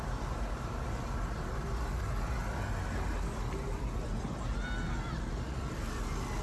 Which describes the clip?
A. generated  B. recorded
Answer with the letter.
B